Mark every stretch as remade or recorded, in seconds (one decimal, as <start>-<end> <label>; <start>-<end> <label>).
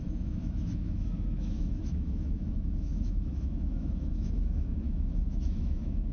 0.0-6.1 remade